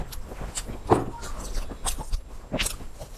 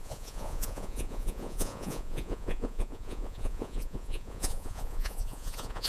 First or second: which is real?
first